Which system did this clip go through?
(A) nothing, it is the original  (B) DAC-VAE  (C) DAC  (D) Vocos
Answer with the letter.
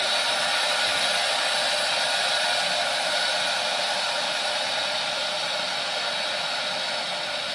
A